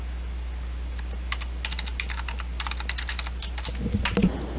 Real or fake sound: real